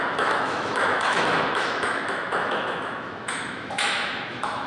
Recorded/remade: remade